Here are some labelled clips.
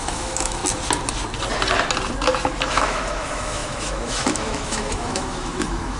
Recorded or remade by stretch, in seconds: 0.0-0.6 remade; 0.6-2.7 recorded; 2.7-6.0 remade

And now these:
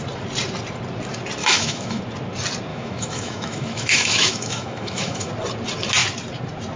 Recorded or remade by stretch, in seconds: 0.0-1.4 recorded; 1.4-2.0 remade; 2.0-2.7 recorded; 2.7-5.3 remade; 5.3-6.8 recorded

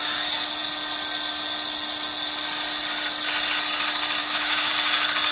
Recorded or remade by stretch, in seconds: 0.0-4.2 recorded; 4.2-4.7 remade; 4.7-5.3 recorded

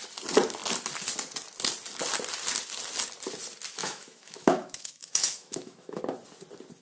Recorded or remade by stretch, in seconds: 0.0-3.8 recorded; 3.8-6.0 remade; 6.0-6.8 recorded

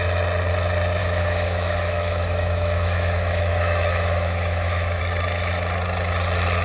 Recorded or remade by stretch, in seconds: 0.0-1.0 recorded; 1.0-5.0 remade; 5.0-6.6 recorded

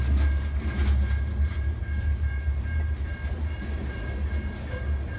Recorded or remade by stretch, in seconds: 0.0-5.2 recorded